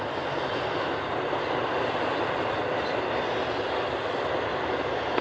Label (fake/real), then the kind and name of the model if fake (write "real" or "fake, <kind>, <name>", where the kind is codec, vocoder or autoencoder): real